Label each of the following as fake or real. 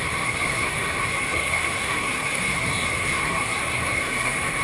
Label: fake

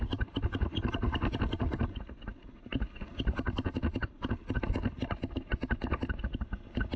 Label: real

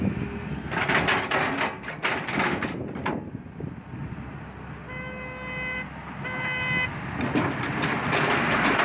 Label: real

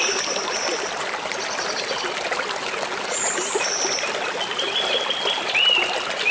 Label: real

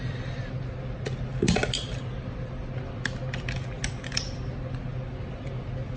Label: real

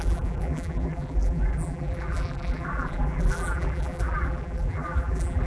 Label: fake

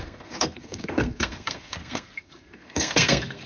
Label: fake